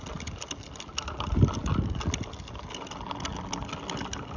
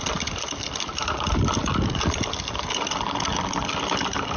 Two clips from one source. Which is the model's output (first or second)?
second